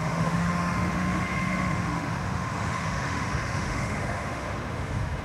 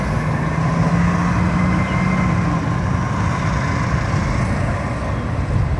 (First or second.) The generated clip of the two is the first